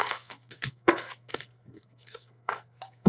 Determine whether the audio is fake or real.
fake